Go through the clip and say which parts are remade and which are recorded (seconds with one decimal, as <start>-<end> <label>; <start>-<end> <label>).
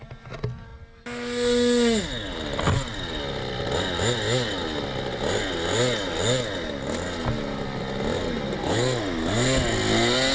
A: 0.0-10.3 recorded